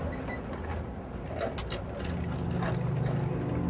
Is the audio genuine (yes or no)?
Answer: yes